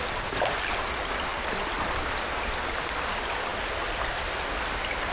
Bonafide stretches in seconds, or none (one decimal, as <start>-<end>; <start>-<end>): 0.0-5.1